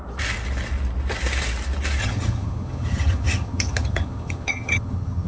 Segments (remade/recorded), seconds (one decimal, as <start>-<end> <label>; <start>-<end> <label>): 0.0-2.0 recorded; 2.0-5.3 remade